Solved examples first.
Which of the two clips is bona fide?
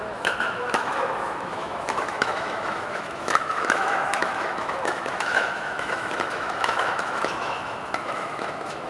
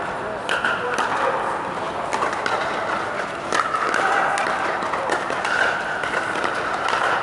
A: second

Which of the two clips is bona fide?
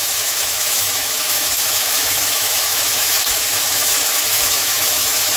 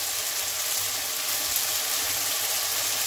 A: second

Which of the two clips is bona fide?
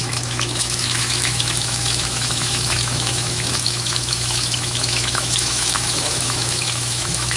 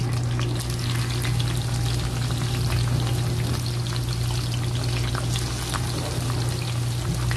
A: second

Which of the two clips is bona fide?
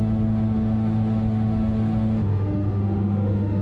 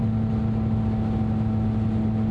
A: second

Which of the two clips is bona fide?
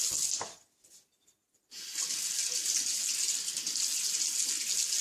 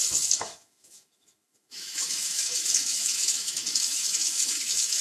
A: first